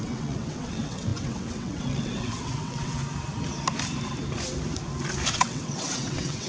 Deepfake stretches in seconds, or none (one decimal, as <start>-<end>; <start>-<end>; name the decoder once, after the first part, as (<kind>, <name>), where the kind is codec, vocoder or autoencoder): 0.0-3.0 (vocoder, WaveNeXt); 5.3-6.5